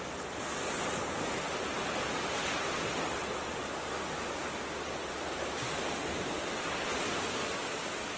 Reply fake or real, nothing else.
real